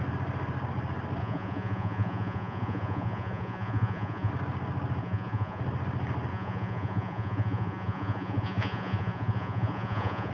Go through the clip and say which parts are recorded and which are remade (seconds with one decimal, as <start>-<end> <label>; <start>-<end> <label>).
0.0-1.2 recorded; 1.2-4.3 remade; 4.3-5.0 recorded; 5.0-5.6 remade; 5.6-6.3 recorded; 6.3-10.3 remade